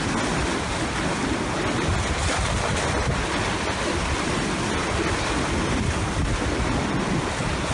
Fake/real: real